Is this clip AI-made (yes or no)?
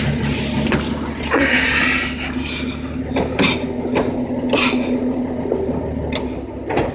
no